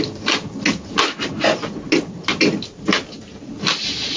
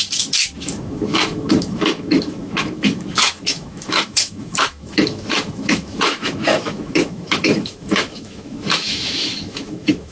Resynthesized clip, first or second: second